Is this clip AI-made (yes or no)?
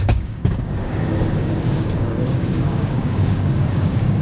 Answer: yes